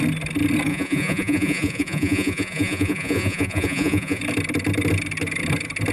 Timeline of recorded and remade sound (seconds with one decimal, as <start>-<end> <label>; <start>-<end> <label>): 0.0-0.7 recorded; 0.7-4.2 remade; 4.2-5.9 recorded